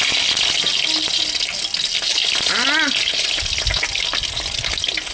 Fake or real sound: real